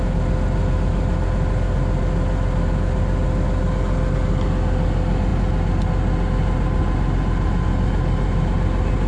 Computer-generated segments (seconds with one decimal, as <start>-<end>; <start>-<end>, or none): none